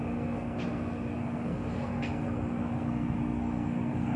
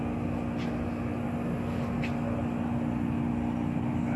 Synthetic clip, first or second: first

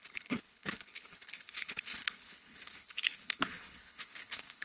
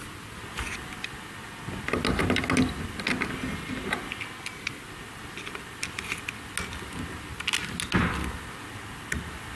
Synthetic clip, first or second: first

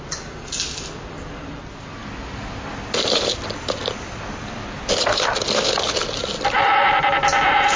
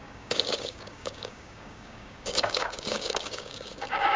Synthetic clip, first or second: second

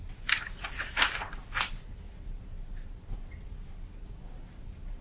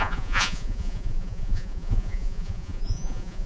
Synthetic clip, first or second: second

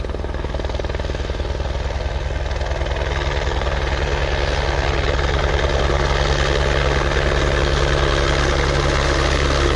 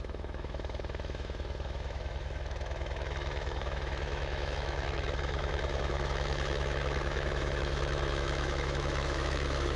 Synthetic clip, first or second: second